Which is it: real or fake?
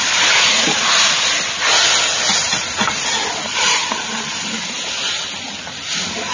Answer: real